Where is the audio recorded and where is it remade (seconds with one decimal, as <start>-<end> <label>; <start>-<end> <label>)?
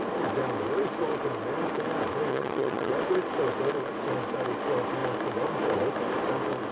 0.0-2.3 recorded; 2.3-2.9 remade; 2.9-6.7 recorded